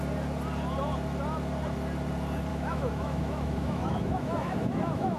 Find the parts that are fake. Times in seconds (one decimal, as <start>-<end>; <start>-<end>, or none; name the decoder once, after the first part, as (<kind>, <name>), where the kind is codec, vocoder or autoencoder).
2.5-5.2 (autoencoder, DAC-VAE)